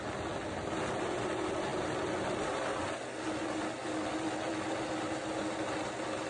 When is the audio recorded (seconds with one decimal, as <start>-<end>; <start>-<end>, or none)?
0.0-6.3